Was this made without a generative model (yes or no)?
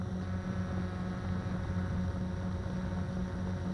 yes